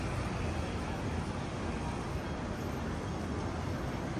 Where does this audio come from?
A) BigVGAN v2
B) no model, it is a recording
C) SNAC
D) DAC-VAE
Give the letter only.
B